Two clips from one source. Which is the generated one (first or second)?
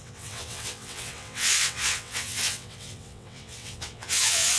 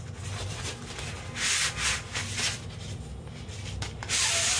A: first